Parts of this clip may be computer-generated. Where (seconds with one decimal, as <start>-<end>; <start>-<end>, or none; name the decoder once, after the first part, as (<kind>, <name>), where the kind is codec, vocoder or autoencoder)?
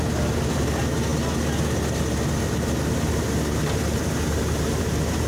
none